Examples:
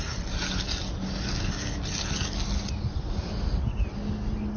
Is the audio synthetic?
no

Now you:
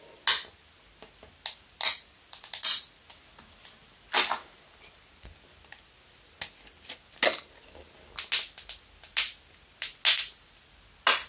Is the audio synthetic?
no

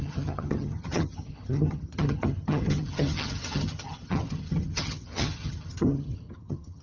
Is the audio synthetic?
yes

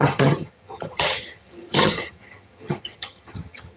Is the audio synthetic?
yes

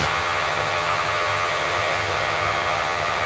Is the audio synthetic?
yes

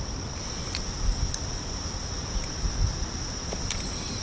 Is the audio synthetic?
no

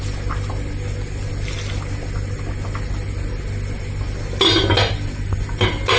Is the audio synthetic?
no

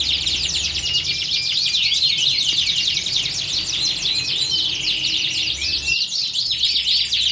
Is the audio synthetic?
no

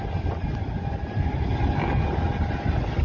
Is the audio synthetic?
no